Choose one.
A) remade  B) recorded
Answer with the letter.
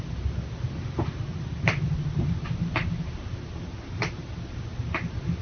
B